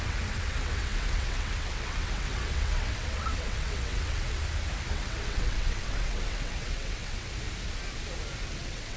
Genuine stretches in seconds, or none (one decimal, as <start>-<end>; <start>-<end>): 4.4-4.9; 7.3-8.5